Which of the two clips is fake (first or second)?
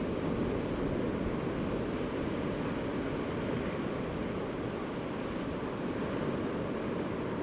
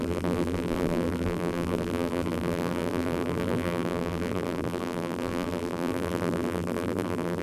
second